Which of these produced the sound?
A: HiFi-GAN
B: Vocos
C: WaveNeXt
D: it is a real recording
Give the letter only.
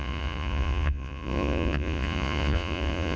B